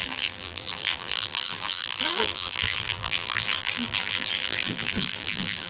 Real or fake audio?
fake